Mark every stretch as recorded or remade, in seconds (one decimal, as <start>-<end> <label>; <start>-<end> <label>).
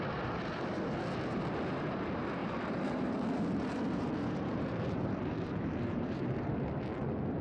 0.0-2.4 recorded; 2.4-6.8 remade; 6.8-7.4 recorded